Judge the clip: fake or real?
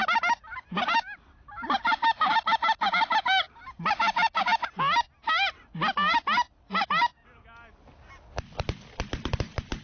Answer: real